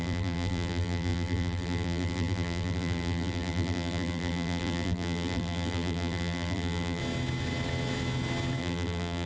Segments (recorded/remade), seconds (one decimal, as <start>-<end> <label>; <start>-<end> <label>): 0.0-7.0 remade; 7.0-8.6 recorded; 8.6-9.3 remade